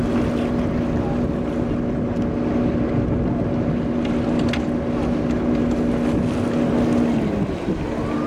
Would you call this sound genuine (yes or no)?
yes